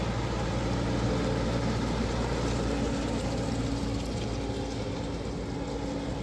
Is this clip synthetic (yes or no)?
no